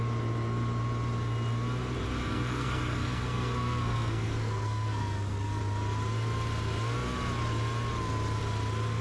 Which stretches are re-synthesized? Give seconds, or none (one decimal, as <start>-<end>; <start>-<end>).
2.2-5.6